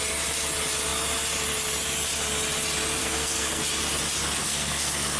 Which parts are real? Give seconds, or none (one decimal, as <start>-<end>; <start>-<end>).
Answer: 0.0-3.0; 3.6-4.4